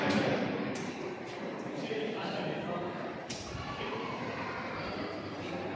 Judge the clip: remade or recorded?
remade